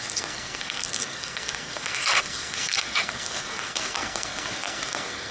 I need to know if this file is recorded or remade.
remade